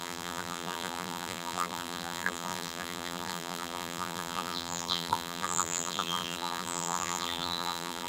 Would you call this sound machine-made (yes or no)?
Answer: yes